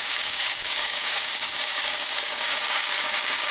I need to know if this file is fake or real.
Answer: fake